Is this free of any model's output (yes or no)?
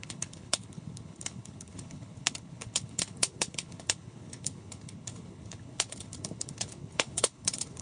no